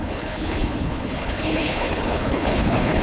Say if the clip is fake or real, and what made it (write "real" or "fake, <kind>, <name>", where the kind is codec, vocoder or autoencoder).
fake, codec, HILCodec